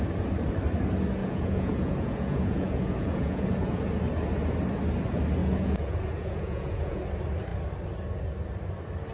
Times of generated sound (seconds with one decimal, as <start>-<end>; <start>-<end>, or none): 1.2-3.8; 5.4-7.0